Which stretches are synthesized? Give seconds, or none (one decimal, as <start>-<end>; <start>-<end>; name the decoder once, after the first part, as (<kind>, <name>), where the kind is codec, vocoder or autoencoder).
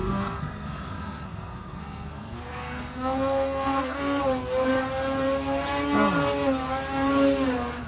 0.0-4.2 (codec, SNAC)